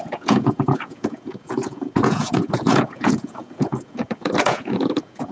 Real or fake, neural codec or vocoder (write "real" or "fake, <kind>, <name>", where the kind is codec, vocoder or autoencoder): fake, vocoder, Vocos